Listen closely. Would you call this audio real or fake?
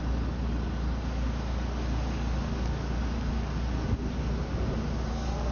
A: real